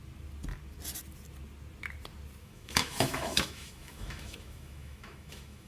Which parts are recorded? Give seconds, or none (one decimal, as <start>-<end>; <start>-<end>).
0.0-2.4